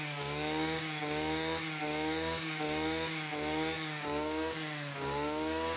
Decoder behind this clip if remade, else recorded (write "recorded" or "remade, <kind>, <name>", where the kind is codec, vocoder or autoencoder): remade, codec, DAC